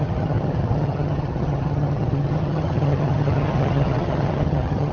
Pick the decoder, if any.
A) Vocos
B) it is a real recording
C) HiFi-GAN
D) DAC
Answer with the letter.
C